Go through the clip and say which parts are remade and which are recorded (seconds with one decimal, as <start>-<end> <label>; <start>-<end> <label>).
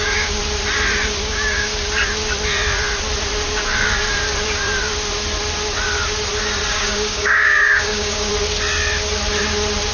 0.0-0.4 remade; 0.4-1.2 recorded; 1.2-1.7 remade; 1.7-6.7 recorded; 6.7-8.3 remade; 8.3-9.9 recorded